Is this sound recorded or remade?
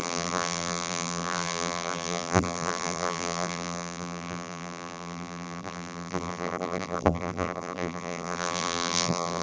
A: remade